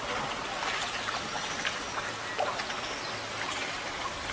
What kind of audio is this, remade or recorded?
recorded